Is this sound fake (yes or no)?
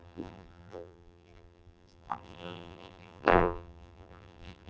yes